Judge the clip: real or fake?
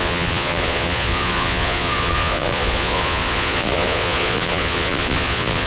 fake